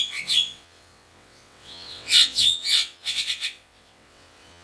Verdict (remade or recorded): remade